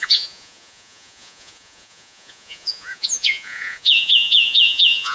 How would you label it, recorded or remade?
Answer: remade